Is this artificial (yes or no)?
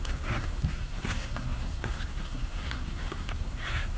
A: yes